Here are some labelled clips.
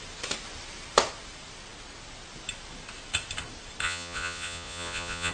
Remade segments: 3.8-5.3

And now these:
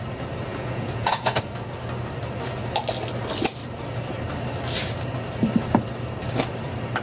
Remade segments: 0.5-1.4

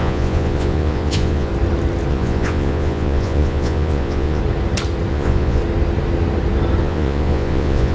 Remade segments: 0.0-1.5; 2.1-4.4; 5.1-5.6; 6.8-7.9

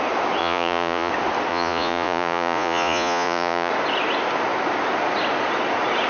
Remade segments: 0.4-1.1; 1.5-3.7

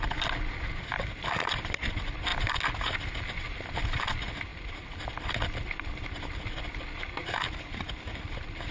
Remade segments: none

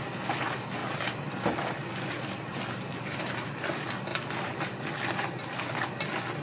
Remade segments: none